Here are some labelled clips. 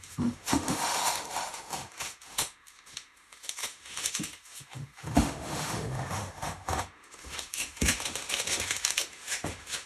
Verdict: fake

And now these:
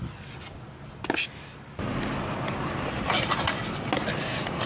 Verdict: real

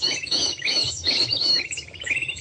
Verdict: fake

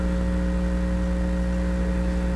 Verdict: real